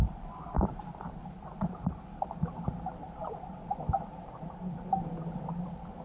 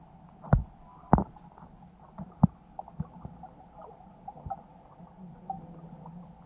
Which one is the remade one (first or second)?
first